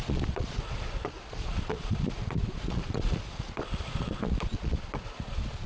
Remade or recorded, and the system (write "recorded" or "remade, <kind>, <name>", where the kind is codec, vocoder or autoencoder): remade, vocoder, Vocos